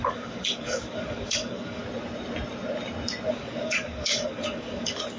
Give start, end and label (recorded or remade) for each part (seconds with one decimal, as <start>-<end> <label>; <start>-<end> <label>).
0.0-1.8 remade; 1.8-3.3 recorded; 3.3-5.2 remade